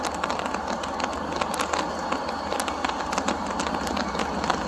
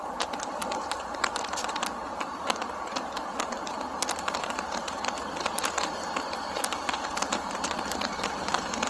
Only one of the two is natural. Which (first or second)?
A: first